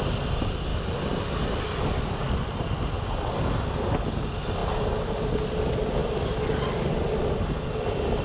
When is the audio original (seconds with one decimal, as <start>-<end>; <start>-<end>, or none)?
0.0-8.2

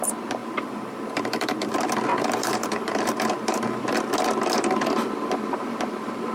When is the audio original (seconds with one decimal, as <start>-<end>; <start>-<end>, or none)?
0.0-0.4; 1.7-2.1; 3.9-6.3

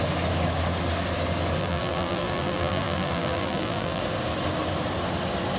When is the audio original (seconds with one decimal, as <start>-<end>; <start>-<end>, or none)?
0.0-1.6; 4.0-5.6

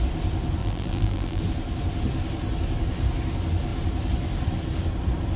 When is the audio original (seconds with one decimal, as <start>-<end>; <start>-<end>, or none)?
0.0-0.6; 1.4-5.4

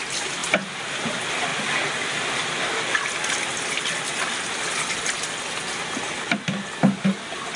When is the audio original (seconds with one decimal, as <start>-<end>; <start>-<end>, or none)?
0.0-0.4; 1.1-7.6

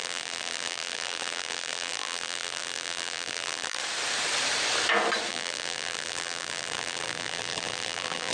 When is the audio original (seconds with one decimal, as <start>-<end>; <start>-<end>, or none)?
3.8-5.3

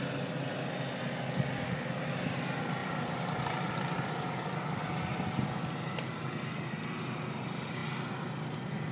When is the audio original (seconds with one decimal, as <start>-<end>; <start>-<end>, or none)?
0.0-2.8; 4.2-8.9